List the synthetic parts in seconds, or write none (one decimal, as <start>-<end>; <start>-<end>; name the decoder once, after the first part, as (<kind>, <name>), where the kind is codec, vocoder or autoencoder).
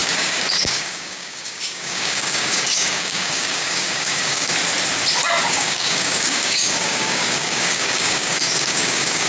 0.0-4.5 (codec, DAC); 5.5-9.3